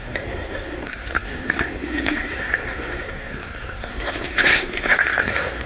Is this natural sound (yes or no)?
no